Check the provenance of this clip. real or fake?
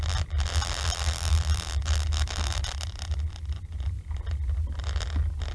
real